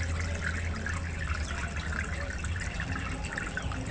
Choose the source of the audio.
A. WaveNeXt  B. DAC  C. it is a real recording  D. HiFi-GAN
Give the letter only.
C